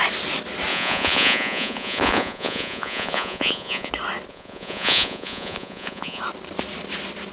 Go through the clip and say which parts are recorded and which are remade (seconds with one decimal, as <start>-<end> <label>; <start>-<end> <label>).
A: 0.0-0.7 recorded; 0.7-3.9 remade; 3.9-4.3 recorded; 4.3-6.2 remade; 6.2-7.3 recorded